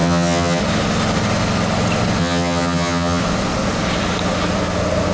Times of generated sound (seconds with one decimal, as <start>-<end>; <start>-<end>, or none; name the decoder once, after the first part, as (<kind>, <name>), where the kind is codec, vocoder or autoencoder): 0.0-0.6 (vocoder, HiFi-GAN); 2.2-3.2